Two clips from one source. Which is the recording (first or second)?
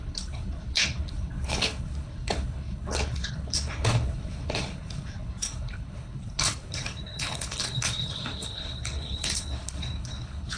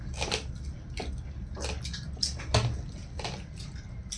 second